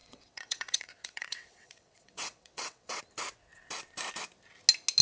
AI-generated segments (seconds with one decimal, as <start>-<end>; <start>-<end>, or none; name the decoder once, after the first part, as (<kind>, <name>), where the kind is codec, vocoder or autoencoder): 0.0-3.0 (vocoder, WaveNeXt)